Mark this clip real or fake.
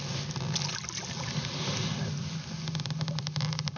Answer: real